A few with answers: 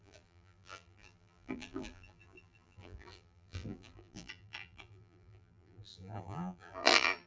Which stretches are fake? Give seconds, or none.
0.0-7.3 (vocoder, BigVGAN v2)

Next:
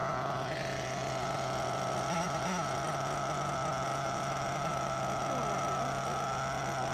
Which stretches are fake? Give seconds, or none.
3.9-5.0 (vocoder, BigVGAN v2)

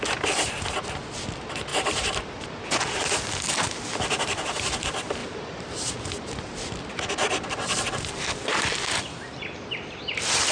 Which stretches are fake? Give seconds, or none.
1.7-2.3 (vocoder, BigVGAN v2); 5.2-5.9

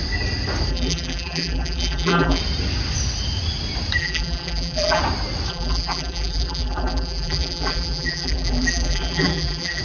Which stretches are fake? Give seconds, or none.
0.7-2.4 (vocoder, BigVGAN v2); 4.0-5.0; 5.5-9.8

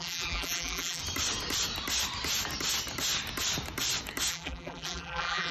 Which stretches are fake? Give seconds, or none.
0.0-1.0 (vocoder, BigVGAN v2); 4.3-5.5